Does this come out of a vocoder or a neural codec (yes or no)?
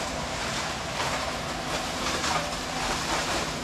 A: yes